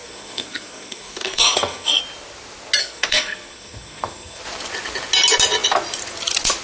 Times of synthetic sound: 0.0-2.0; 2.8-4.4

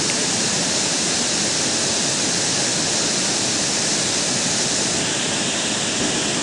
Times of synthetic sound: none